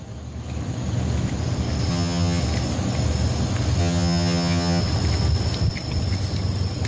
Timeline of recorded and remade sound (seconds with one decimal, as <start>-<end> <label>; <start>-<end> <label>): 0.0-1.9 recorded; 1.9-2.4 remade; 2.4-3.8 recorded; 3.8-4.8 remade; 4.8-6.9 recorded